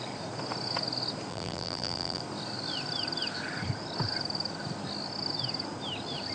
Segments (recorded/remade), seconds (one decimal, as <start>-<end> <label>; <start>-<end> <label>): 0.0-1.3 recorded; 1.3-2.2 remade; 2.2-6.3 recorded